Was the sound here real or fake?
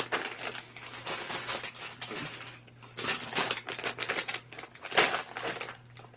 real